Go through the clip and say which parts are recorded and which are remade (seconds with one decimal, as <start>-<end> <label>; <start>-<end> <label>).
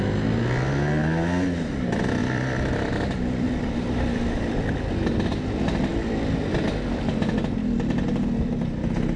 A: 0.0-2.2 recorded; 2.2-4.9 remade; 4.9-5.9 recorded; 5.9-6.5 remade; 6.5-9.2 recorded